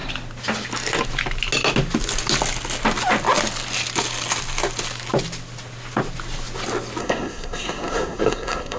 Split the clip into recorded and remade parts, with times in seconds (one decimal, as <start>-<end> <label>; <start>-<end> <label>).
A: 0.0-7.0 recorded; 7.0-8.8 remade